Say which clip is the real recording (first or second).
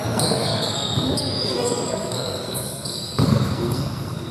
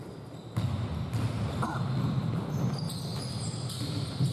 second